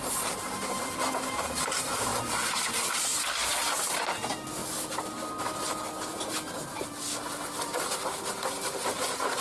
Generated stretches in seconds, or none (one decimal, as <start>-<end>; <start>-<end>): none